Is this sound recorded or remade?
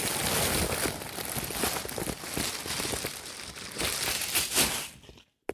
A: recorded